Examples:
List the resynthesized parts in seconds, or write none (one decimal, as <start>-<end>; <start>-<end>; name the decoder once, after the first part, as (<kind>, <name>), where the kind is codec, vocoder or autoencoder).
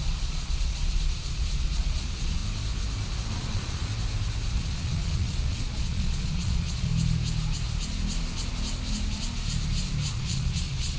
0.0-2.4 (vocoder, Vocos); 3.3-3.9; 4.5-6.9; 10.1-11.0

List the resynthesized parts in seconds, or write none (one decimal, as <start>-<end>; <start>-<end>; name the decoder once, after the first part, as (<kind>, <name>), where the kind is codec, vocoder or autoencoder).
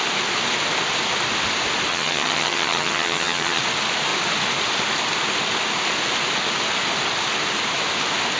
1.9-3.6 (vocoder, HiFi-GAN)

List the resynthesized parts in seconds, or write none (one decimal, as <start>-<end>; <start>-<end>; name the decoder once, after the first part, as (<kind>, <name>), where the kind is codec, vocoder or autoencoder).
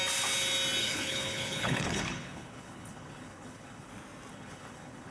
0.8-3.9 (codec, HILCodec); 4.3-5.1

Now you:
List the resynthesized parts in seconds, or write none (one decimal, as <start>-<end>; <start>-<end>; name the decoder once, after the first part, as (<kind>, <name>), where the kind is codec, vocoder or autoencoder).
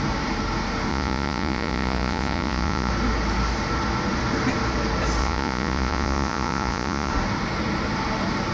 0.9-2.9 (vocoder, Vocos); 5.2-7.1